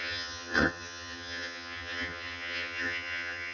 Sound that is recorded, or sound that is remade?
remade